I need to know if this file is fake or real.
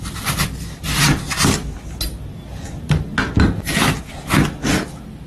real